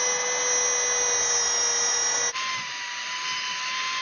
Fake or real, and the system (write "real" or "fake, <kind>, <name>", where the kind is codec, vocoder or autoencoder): real